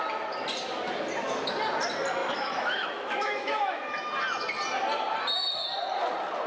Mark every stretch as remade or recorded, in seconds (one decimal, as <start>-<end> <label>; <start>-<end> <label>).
0.0-2.2 recorded; 2.2-3.9 remade; 3.9-6.5 recorded